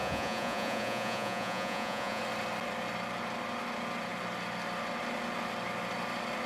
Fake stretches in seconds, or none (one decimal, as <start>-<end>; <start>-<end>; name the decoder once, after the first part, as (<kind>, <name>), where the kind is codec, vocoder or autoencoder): 0.0-2.2 (vocoder, Vocos)